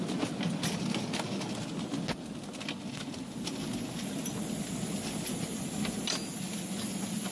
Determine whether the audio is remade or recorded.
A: recorded